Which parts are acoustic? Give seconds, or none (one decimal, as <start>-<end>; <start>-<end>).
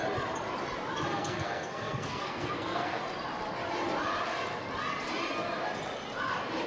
0.0-1.1; 3.0-6.7